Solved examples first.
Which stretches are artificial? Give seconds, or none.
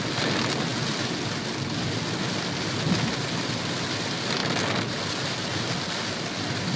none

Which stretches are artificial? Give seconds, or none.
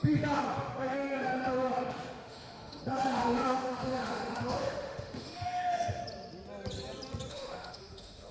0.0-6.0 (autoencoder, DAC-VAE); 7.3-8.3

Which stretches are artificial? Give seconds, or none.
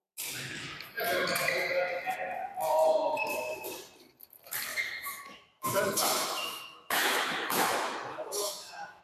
4.7-9.0 (autoencoder, DAC-VAE)